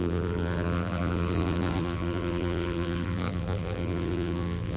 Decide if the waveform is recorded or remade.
remade